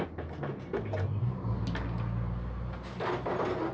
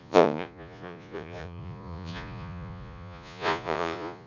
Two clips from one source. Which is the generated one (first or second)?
second